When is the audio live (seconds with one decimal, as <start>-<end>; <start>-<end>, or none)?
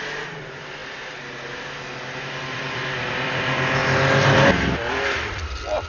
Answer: 0.8-2.2; 3.8-4.9